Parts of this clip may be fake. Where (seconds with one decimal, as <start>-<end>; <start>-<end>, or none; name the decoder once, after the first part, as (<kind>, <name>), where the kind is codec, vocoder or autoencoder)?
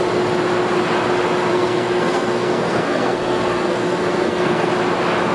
1.5-4.7 (codec, SNAC)